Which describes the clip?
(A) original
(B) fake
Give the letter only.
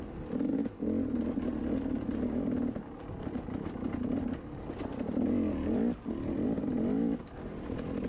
A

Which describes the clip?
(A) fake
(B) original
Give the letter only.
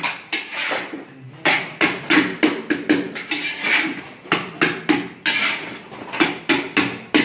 B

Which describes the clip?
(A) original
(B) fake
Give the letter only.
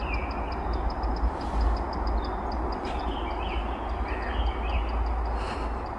A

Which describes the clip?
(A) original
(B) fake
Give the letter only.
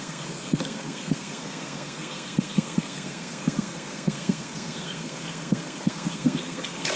B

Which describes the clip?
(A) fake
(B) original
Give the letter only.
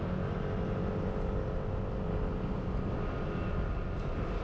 B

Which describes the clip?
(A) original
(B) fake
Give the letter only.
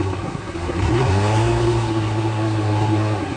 B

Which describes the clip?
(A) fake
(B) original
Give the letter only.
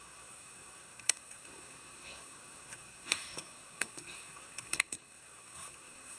A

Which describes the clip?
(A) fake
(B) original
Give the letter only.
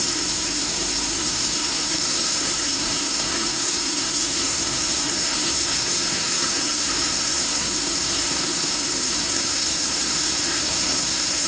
A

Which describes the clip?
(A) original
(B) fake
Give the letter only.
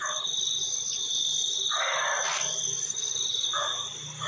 A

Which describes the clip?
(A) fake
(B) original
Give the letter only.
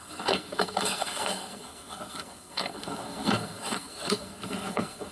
A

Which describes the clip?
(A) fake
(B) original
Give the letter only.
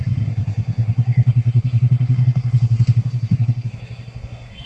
A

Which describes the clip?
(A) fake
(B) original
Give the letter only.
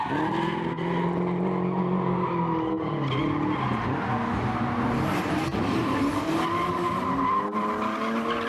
B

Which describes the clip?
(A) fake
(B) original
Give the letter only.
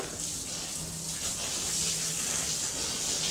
B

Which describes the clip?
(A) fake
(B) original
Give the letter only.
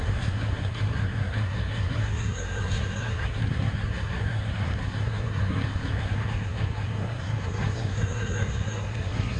A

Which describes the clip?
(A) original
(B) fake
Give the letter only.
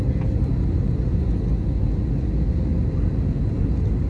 A